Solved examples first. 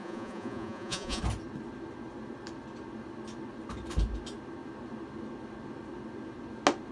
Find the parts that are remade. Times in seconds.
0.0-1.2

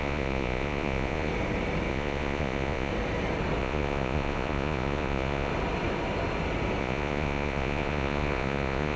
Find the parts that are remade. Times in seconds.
0.0-1.3; 1.9-2.9; 3.6-5.5; 6.8-9.0